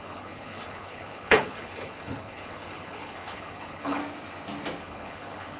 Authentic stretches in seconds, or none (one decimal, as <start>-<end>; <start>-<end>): 4.0-4.8